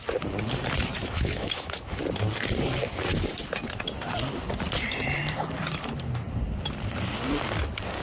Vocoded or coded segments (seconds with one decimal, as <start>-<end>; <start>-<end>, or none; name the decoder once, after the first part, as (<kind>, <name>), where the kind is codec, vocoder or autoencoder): 1.0-2.0 (autoencoder, DAC-VAE)